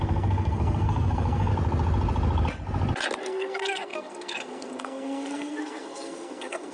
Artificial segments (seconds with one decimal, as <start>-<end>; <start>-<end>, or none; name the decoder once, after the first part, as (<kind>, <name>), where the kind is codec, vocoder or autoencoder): 0.0-1.5 (codec, SNAC); 3.2-6.7